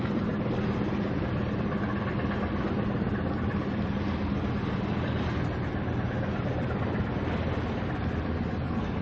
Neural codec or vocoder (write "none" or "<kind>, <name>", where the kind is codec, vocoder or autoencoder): none